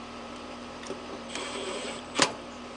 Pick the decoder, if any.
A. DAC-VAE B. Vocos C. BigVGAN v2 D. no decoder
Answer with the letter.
C